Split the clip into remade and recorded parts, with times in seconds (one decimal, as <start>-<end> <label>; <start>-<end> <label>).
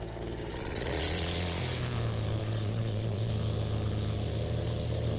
0.0-0.5 recorded; 0.5-1.6 remade; 1.6-2.4 recorded; 2.4-3.3 remade; 3.3-5.2 recorded